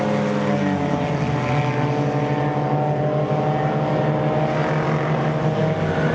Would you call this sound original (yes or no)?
yes